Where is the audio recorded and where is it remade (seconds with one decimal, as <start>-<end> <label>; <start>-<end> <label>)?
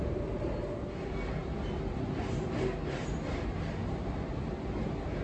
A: 0.0-5.2 recorded